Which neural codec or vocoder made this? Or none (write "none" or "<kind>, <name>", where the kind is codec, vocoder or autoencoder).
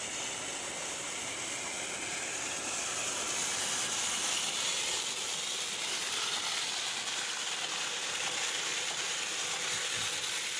none